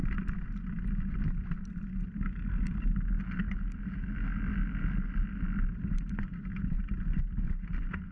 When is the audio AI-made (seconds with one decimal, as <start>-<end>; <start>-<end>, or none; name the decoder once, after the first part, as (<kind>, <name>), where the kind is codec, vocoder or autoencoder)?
none